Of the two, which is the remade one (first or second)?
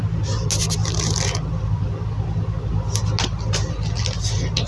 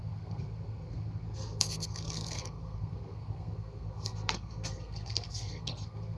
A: second